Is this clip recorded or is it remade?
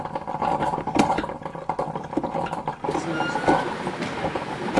recorded